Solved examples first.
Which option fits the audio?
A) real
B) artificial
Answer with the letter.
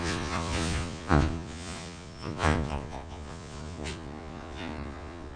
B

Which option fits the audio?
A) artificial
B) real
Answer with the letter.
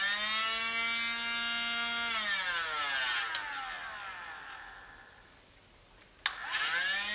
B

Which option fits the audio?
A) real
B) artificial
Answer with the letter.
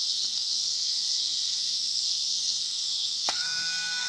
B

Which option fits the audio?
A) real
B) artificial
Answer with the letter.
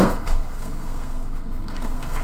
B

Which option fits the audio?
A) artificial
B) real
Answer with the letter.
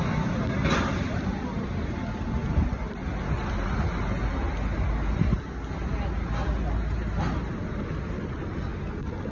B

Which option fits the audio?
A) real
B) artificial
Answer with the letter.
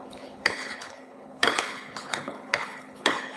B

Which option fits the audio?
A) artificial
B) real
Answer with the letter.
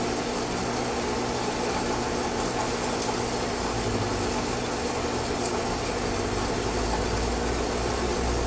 B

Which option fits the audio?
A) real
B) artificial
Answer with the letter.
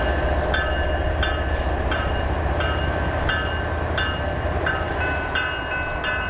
A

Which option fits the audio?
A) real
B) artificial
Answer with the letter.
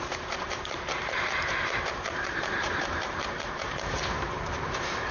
B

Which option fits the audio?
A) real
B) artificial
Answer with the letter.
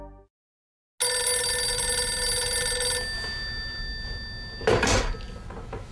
A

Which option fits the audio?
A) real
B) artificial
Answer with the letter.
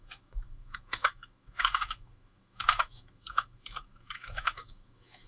B